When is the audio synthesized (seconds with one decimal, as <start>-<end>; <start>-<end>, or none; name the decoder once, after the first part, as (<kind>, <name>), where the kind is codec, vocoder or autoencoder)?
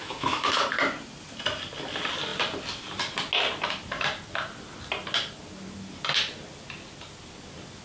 0.0-0.6 (autoencoder, DAC-VAE)